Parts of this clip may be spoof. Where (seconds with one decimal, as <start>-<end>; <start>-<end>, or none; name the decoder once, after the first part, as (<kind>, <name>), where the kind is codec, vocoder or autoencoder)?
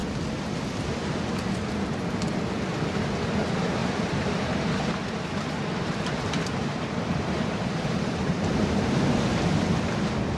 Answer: 3.8-8.8 (vocoder, BigVGAN v2)